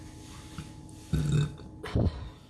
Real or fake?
real